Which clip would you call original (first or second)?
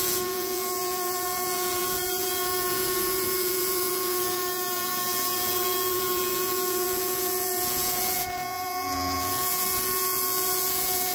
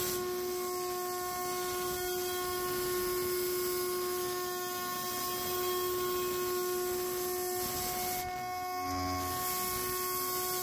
second